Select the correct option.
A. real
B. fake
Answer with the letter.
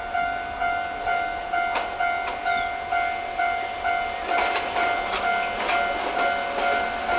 A